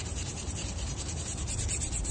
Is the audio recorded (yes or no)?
no